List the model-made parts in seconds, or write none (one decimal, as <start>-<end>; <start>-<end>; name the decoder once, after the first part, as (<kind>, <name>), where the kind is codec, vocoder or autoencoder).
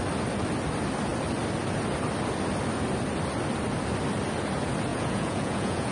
4.9-5.9 (vocoder, Vocos)